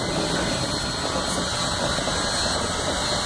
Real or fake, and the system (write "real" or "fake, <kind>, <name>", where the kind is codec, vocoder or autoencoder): real